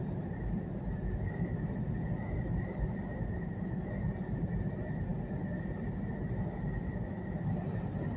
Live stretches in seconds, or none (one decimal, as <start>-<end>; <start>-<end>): 0.0-8.2